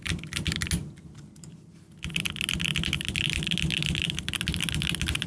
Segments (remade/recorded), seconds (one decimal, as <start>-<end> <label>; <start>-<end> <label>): 0.0-5.3 recorded